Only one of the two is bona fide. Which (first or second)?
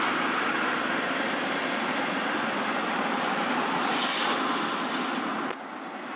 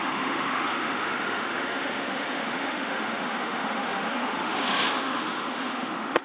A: first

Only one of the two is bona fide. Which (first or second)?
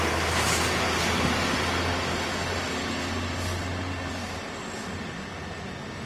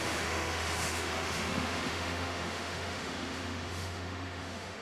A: first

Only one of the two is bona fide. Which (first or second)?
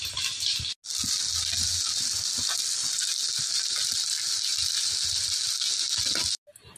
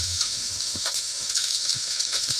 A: first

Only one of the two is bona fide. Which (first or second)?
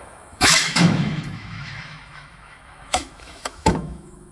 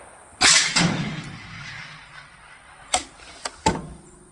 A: second